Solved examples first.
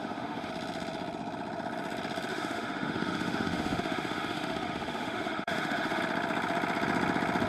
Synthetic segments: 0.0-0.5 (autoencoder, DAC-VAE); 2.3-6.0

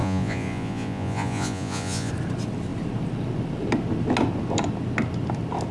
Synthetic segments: 0.0-2.1 (vocoder, Vocos)